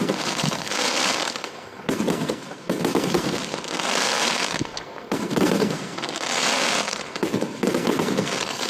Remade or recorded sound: remade